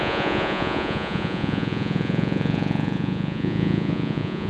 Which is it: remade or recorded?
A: remade